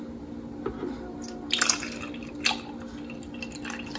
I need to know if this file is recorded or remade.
recorded